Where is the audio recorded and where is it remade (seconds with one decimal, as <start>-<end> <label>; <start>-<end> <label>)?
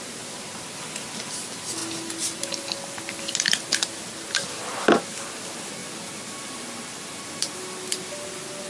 0.0-8.7 recorded